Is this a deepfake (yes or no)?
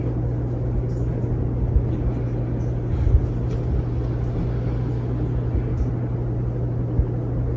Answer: no